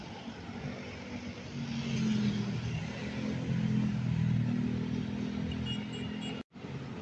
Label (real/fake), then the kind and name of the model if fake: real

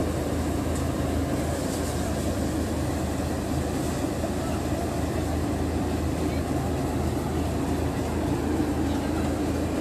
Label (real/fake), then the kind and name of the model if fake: real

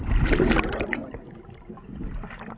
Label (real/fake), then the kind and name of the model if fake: real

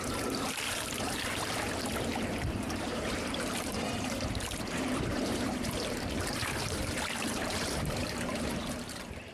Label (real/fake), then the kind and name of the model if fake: fake, vocoder, BigVGAN v2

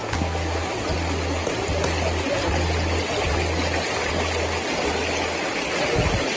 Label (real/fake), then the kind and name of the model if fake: real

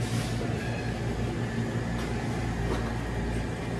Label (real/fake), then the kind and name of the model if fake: real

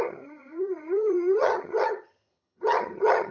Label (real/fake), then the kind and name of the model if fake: fake, vocoder, HiFi-GAN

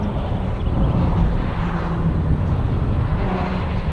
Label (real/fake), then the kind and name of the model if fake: real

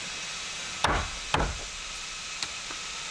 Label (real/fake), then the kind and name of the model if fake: real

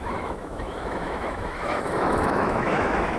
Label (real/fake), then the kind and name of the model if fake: fake, autoencoder, DAC-VAE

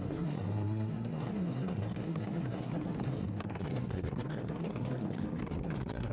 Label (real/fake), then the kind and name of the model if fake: fake, codec, SNAC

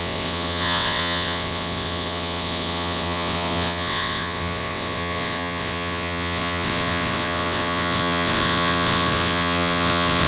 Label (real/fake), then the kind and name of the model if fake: fake, vocoder, WaveNeXt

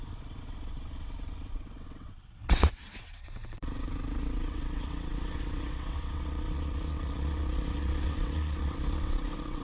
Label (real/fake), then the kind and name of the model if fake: fake, vocoder, WaveNeXt